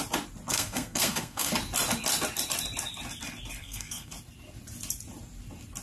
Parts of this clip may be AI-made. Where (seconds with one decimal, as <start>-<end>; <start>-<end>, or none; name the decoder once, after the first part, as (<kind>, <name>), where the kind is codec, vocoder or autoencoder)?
0.5-1.5 (codec, SNAC); 3.6-4.1